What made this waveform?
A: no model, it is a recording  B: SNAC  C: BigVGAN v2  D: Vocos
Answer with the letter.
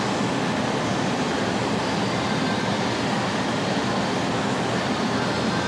A